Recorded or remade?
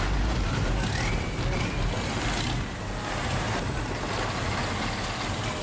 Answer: recorded